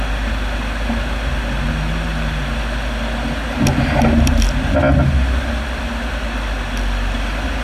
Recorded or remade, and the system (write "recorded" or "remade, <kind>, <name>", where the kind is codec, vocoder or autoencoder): recorded